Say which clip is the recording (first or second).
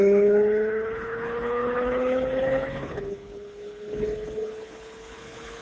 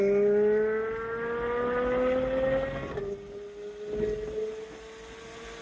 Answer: second